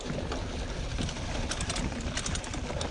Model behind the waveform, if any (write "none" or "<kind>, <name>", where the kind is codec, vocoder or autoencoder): none